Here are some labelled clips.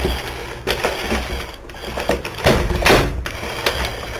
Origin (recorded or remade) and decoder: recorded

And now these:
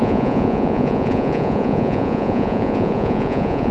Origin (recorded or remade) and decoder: remade, vocoder, Vocos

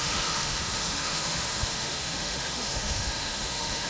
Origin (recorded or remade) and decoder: remade, autoencoder, DAC-VAE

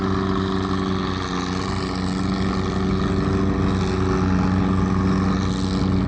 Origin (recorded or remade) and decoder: recorded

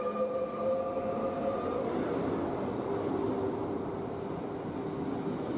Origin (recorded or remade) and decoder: recorded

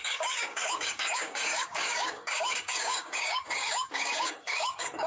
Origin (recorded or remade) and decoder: remade, codec, DAC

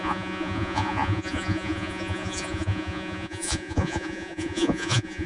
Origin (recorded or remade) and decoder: remade, vocoder, Vocos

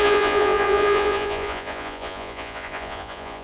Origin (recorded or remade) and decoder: remade, vocoder, Vocos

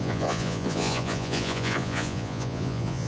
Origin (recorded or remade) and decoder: remade, vocoder, Vocos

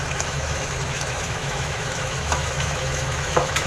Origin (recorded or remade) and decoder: remade, autoencoder, DAC-VAE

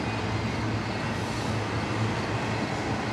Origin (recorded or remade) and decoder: recorded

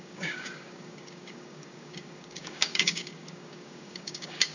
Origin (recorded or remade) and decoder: remade, codec, DAC